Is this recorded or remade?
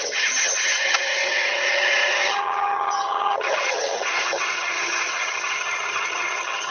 remade